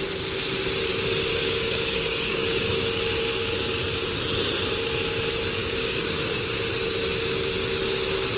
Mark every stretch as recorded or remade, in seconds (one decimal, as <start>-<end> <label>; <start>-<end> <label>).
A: 0.0-1.3 recorded; 1.3-2.9 remade; 2.9-5.6 recorded; 5.6-6.4 remade; 6.4-8.4 recorded